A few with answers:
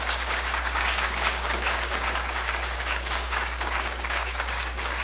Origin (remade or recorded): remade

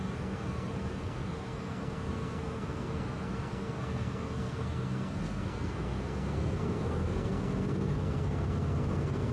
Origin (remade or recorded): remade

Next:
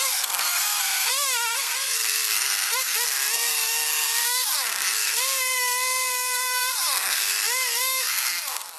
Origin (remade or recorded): remade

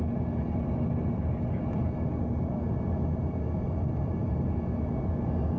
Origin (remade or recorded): recorded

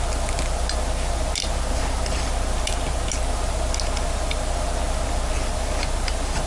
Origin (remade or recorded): recorded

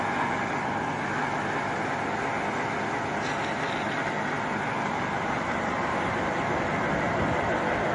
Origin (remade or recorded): recorded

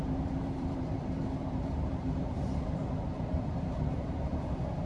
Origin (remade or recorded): remade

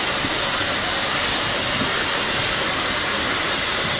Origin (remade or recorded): recorded